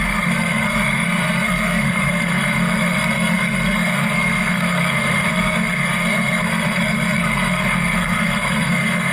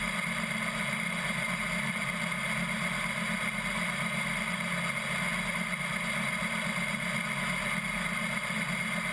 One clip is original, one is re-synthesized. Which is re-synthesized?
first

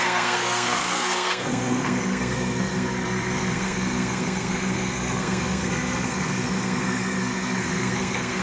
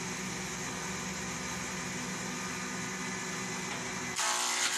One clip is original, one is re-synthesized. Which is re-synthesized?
first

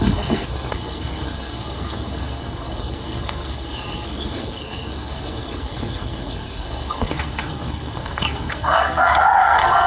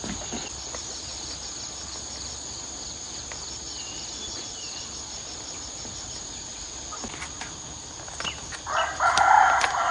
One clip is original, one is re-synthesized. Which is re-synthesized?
first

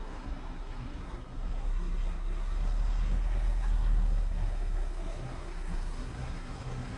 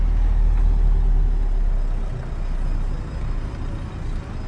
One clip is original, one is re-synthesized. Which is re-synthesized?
first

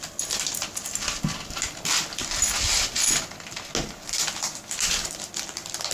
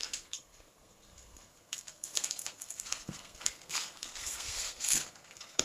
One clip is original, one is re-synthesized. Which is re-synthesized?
second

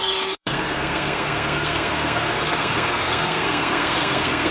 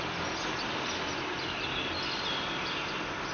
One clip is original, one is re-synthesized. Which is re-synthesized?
first